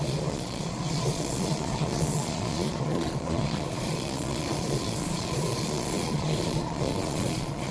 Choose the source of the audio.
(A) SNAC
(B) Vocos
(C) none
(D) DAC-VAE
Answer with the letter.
B